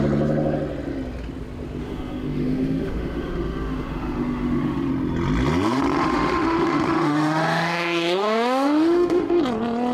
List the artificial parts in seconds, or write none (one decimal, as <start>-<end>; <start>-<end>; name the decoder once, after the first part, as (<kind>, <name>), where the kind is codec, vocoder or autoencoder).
1.8-4.9 (autoencoder, DAC-VAE); 6.0-9.4